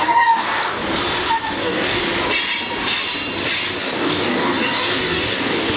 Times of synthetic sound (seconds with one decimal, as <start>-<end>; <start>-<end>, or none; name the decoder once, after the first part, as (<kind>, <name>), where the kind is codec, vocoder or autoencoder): 0.0-0.8 (codec, DAC); 1.6-2.0; 3.8-5.8